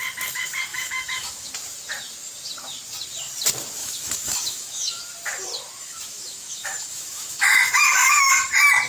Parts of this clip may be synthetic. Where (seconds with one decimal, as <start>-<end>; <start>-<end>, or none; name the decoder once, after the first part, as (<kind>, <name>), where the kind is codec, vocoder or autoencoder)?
0.7-1.5 (autoencoder, DAC-VAE); 3.8-5.0; 5.8-8.5